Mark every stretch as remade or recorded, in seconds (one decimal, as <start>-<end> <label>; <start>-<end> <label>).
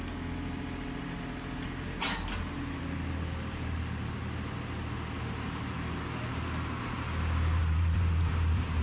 0.0-7.6 recorded; 7.6-8.8 remade